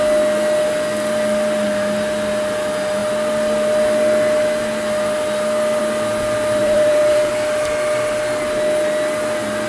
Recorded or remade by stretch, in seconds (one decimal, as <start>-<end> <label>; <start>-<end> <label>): 0.0-6.6 recorded; 6.6-7.3 remade; 7.3-9.7 recorded